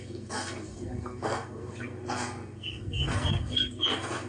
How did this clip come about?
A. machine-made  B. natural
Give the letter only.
A